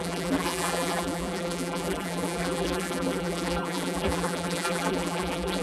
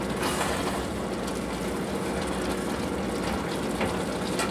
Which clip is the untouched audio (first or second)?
second